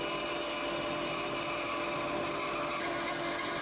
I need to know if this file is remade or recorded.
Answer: recorded